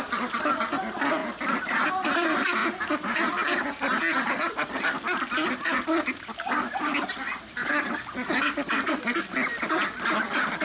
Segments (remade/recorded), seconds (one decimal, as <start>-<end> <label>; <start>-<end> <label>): 0.0-10.6 recorded